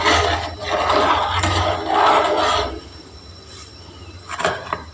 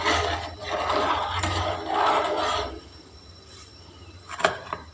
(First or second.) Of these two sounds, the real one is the first